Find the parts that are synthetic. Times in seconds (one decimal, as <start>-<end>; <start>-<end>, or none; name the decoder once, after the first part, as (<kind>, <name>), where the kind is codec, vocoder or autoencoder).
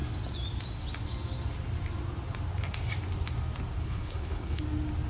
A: 3.8-4.6 (codec, HILCodec)